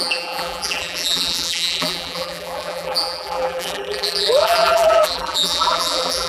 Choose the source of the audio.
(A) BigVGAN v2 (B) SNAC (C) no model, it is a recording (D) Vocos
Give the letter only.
A